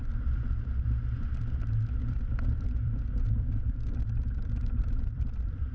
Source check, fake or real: fake